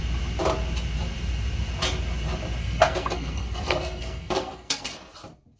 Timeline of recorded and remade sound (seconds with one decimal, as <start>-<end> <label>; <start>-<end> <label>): 0.0-2.6 recorded; 2.6-4.9 remade; 4.9-5.6 recorded